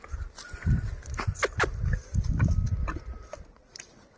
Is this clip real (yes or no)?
yes